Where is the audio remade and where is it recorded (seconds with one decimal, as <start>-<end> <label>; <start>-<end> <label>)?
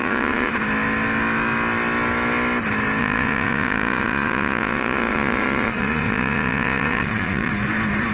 0.0-0.5 remade; 0.5-3.0 recorded; 3.0-7.5 remade; 7.5-8.1 recorded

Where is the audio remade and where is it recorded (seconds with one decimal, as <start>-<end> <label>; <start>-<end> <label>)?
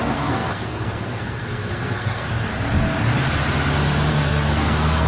0.0-2.5 remade; 2.5-4.1 recorded; 4.1-5.1 remade